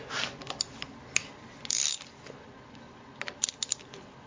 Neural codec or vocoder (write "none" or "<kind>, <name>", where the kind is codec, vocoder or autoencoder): none